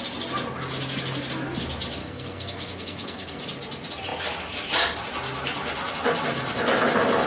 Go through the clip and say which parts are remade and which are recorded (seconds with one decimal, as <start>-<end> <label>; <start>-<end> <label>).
0.0-2.0 recorded; 2.0-3.4 remade; 3.4-7.3 recorded